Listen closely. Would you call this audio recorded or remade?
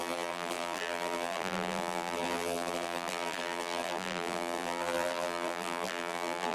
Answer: remade